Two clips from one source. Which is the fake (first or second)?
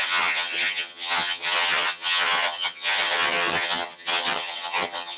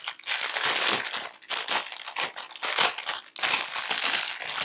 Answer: first